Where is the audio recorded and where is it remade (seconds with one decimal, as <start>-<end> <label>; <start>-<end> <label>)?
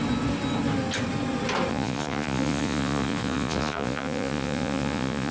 0.0-1.7 recorded; 1.7-5.3 remade